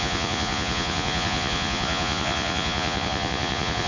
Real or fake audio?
fake